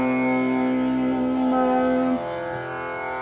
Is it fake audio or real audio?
real